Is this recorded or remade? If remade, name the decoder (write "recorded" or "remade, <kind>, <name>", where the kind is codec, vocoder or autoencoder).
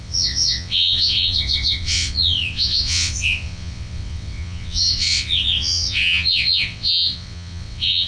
remade, vocoder, WaveNeXt